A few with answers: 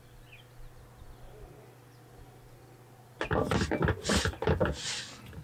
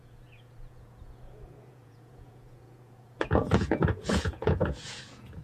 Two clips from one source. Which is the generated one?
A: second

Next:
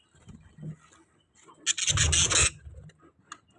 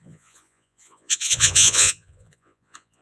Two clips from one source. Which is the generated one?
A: second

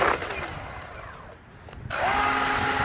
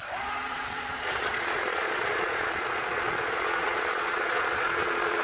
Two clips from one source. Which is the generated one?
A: second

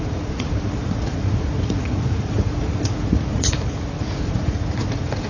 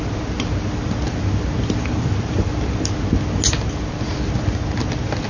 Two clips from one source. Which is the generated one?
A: first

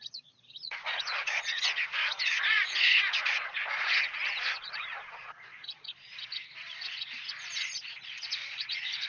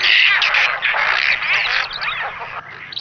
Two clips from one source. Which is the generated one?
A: first